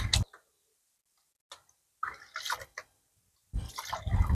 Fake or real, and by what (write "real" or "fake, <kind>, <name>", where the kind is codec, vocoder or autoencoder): real